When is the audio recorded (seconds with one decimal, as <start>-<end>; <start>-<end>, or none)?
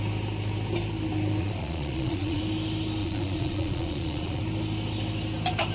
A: 0.0-1.4; 2.4-3.0; 4.4-5.7